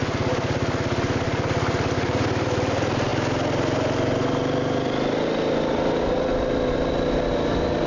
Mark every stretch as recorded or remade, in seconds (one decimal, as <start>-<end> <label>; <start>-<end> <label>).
0.0-7.9 recorded